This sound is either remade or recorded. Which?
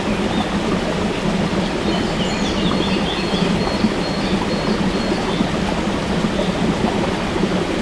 recorded